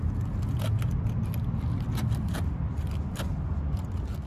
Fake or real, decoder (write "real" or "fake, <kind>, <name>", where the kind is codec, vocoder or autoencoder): real